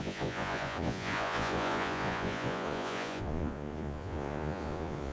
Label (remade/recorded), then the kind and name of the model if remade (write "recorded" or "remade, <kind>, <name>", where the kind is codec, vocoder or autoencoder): remade, vocoder, Vocos